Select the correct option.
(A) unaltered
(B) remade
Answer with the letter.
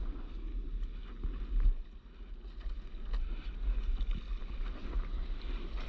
A